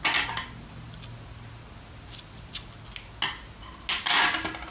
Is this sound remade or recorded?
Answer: recorded